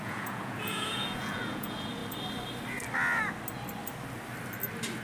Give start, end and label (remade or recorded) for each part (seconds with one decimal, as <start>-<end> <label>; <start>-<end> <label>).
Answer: 0.0-2.0 remade; 2.0-5.0 recorded